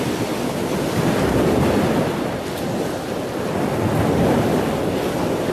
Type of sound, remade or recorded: recorded